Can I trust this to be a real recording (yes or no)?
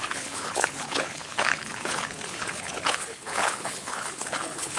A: no